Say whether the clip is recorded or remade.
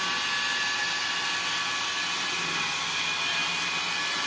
recorded